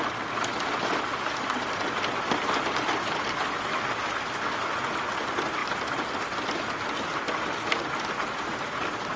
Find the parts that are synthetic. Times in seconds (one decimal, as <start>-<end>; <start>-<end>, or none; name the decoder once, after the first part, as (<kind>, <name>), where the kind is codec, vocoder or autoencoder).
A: none